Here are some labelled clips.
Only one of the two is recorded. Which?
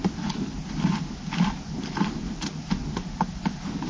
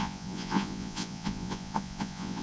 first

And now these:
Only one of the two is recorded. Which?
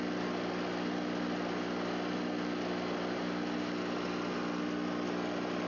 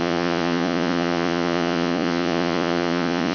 first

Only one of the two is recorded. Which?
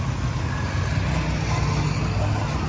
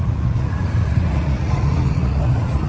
first